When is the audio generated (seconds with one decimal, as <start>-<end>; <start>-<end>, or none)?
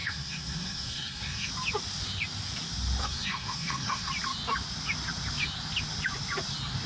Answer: 0.0-1.5; 3.0-4.1